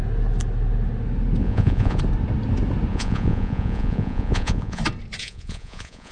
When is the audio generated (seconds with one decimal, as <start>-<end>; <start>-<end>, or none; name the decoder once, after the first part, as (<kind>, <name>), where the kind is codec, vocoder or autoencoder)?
1.4-2.0 (vocoder, Vocos); 2.9-4.8; 5.2-6.1